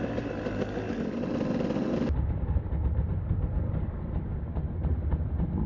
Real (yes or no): yes